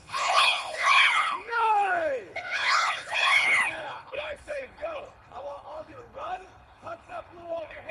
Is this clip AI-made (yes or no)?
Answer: yes